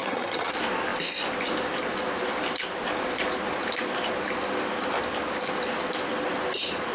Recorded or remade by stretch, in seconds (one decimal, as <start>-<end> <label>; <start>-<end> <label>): 0.0-0.5 remade; 0.5-6.9 recorded